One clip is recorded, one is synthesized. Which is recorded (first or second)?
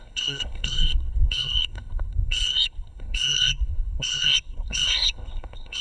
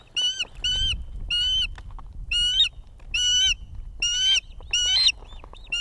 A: second